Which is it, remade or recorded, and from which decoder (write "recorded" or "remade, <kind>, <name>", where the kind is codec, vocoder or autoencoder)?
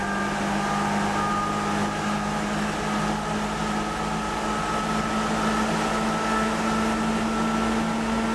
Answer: recorded